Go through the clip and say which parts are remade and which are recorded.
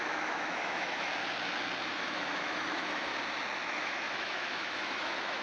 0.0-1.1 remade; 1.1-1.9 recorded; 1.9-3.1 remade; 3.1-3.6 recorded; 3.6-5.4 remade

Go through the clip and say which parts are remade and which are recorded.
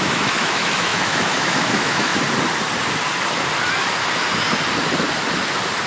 0.0-2.1 remade; 2.1-5.9 recorded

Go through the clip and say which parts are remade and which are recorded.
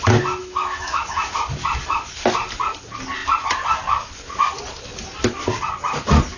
0.0-0.4 recorded; 0.4-1.3 remade; 1.3-6.4 recorded